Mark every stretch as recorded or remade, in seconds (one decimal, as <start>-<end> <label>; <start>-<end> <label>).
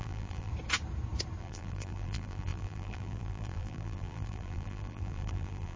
0.0-0.5 remade; 0.5-1.4 recorded; 1.4-5.8 remade